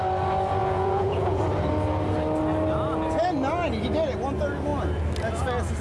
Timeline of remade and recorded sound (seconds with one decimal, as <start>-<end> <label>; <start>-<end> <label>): 0.0-0.6 recorded; 0.6-1.4 remade; 1.4-5.8 recorded